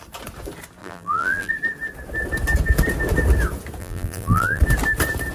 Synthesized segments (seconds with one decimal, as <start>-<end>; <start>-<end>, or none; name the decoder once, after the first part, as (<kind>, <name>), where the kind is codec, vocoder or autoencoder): 0.8-1.5 (vocoder, BigVGAN v2); 3.8-4.6